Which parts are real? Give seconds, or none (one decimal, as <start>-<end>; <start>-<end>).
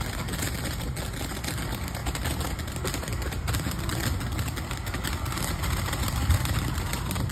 0.0-7.3